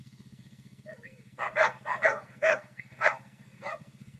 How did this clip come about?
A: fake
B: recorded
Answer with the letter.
A